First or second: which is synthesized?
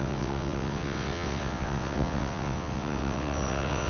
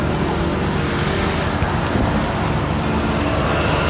first